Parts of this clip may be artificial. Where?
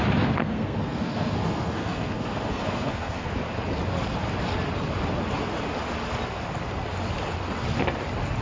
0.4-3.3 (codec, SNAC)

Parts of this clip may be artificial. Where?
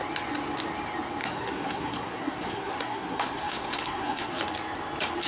1.2-4.4 (codec, SNAC)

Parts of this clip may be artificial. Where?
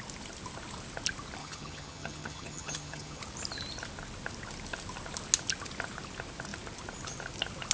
1.4-3.2 (vocoder, HiFi-GAN)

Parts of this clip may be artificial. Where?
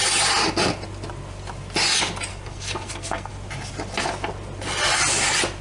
2.3-3.3 (codec, SNAC)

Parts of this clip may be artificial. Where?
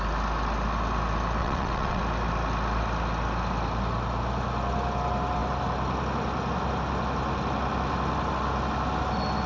1.4-2.0 (vocoder, WaveNeXt)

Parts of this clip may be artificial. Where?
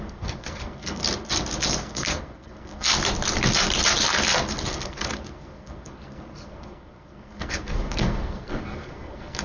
0.0-1.0 (codec, SNAC); 1.8-2.9; 4.7-9.4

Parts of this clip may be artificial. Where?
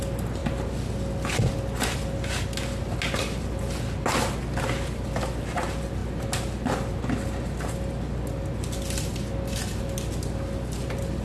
none